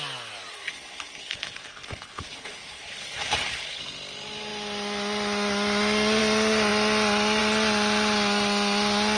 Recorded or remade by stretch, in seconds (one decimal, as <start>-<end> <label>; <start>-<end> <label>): 0.0-0.5 recorded; 0.5-3.8 remade; 3.8-9.2 recorded